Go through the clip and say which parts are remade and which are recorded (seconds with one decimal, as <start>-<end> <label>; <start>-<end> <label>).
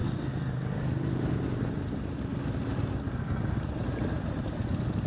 0.0-5.1 recorded